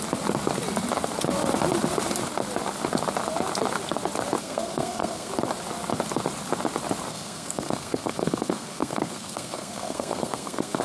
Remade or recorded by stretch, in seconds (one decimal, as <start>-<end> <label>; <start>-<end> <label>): 0.0-4.4 recorded; 4.4-5.3 remade; 5.3-7.1 recorded; 7.1-10.8 remade